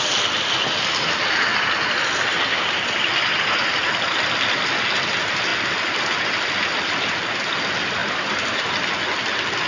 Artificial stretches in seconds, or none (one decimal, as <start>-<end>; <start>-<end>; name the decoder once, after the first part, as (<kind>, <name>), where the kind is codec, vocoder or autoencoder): none